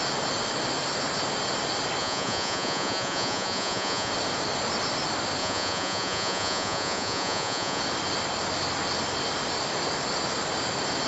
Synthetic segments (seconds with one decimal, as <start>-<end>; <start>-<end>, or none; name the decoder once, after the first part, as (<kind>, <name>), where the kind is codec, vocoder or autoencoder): 2.0-4.1 (vocoder, Vocos); 5.4-7.8